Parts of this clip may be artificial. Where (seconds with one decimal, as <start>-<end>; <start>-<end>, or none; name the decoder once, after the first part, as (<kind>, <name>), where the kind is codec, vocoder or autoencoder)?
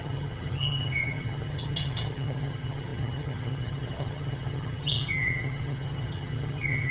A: 0.0-6.9 (vocoder, HiFi-GAN)